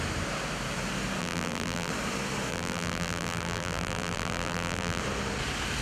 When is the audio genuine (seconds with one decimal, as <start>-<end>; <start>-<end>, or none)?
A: 0.0-1.2; 1.9-2.5; 5.0-5.8